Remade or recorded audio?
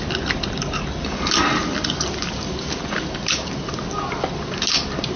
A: recorded